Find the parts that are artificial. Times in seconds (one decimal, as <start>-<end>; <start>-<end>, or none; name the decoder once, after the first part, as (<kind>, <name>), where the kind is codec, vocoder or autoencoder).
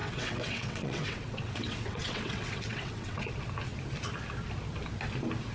0.0-3.3 (vocoder, WaveNeXt)